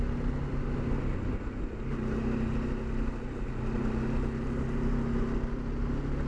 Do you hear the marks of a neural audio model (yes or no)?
no